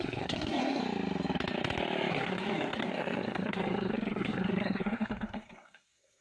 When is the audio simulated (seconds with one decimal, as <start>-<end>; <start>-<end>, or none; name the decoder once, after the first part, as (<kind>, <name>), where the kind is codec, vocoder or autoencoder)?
0.0-0.8 (codec, SNAC); 2.1-6.2